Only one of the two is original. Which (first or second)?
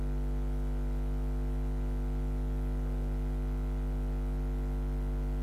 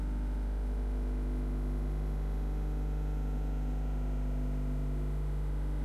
first